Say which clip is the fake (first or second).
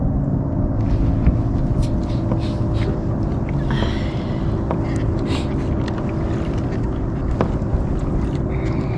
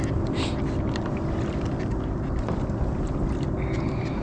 second